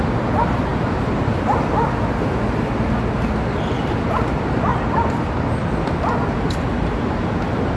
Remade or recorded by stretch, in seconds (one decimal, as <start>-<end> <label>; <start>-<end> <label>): 0.0-7.8 recorded

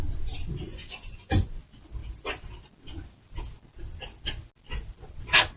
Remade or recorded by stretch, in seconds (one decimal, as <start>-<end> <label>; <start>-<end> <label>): 0.0-0.7 recorded; 0.7-1.6 remade; 1.6-5.6 recorded

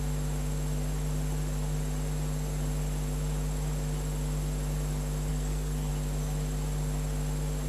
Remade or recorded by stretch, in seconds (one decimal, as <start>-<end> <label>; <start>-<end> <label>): 0.0-5.3 recorded; 5.3-5.9 remade; 5.9-7.7 recorded

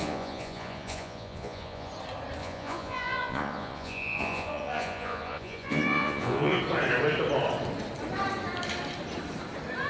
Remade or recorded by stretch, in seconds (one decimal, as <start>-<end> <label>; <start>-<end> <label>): 0.0-1.9 remade; 1.9-2.4 recorded; 2.4-6.6 remade; 6.6-9.9 recorded

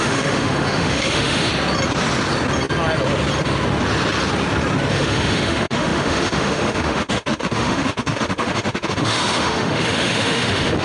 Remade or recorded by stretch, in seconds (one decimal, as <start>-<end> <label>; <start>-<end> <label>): 0.0-1.5 remade; 1.5-4.9 recorded; 4.9-10.8 remade

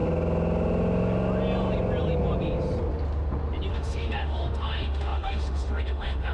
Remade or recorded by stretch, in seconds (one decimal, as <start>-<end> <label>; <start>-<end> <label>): 0.0-3.7 recorded; 3.7-6.3 remade

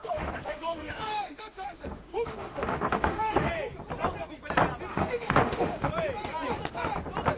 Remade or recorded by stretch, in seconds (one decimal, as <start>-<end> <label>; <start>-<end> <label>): 0.0-3.5 remade; 3.5-4.9 recorded; 4.9-5.9 remade; 5.9-7.4 recorded

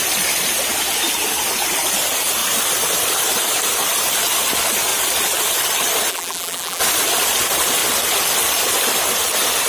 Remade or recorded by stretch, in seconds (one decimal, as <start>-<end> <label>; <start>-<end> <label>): 0.0-6.1 recorded; 6.1-6.8 remade; 6.8-9.7 recorded